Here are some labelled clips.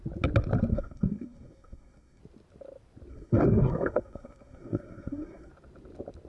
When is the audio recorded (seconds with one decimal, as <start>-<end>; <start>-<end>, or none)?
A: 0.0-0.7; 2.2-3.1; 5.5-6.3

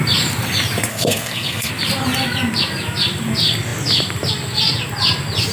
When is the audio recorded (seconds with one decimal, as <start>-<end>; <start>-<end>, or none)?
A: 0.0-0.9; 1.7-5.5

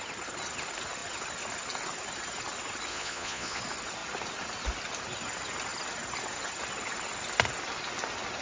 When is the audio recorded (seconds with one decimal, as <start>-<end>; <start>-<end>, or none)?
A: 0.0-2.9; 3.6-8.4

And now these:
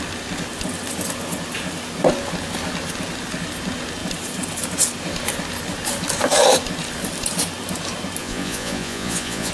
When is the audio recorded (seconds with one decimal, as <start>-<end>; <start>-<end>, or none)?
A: 0.0-8.2

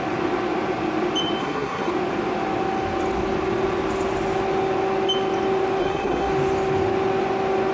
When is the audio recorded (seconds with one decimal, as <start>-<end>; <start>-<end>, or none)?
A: 0.0-1.4; 1.9-5.8; 6.3-7.7